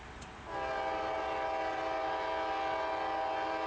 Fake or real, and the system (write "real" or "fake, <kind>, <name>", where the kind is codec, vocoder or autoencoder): real